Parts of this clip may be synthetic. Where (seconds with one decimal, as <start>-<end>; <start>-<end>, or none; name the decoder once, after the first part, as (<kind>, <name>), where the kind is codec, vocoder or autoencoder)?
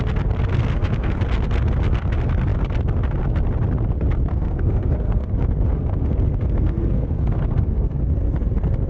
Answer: 0.5-1.2 (codec, SNAC); 4.3-8.0